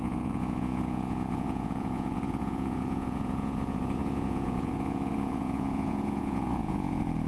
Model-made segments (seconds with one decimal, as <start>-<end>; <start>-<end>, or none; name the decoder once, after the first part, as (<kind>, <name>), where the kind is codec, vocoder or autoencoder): 0.0-7.3 (vocoder, Vocos)